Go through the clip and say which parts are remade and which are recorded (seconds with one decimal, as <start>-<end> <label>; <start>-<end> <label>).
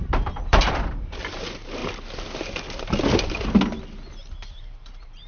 0.0-1.8 remade; 1.8-4.5 recorded; 4.5-5.3 remade